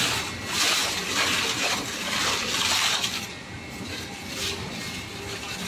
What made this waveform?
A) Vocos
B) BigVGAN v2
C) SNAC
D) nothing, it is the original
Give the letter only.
D